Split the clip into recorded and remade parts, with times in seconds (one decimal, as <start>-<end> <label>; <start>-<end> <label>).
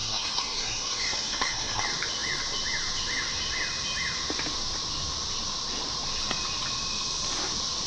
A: 0.0-1.8 remade; 1.8-7.9 recorded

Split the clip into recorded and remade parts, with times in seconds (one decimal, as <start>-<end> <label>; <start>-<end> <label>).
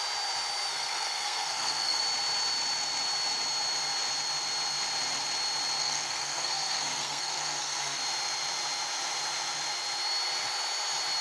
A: 0.0-0.7 recorded; 0.7-2.0 remade; 2.0-5.8 recorded; 5.8-8.0 remade; 8.0-11.2 recorded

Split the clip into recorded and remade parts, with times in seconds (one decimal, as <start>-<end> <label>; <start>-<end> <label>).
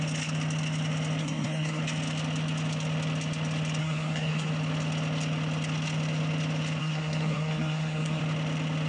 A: 0.0-1.2 recorded; 1.2-1.8 remade; 1.8-3.8 recorded; 3.8-4.5 remade; 4.5-6.8 recorded; 6.8-8.2 remade; 8.2-8.9 recorded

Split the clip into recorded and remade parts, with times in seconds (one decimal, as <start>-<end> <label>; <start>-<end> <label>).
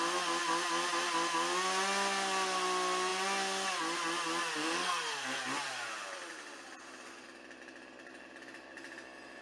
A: 0.0-4.6 recorded; 4.6-5.4 remade; 5.4-9.4 recorded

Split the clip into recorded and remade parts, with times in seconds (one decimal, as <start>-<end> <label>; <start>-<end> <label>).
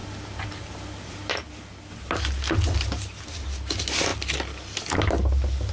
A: 0.0-5.7 recorded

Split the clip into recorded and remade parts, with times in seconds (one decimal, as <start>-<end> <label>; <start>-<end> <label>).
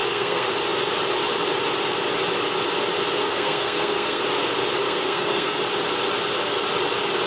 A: 0.0-0.5 remade; 0.5-3.2 recorded; 3.2-4.2 remade; 4.2-4.8 recorded; 4.8-5.6 remade; 5.6-7.3 recorded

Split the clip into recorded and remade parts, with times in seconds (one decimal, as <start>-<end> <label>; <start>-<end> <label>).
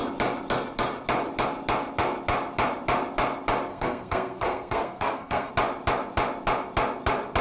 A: 0.0-3.7 recorded; 3.7-5.5 remade; 5.5-7.4 recorded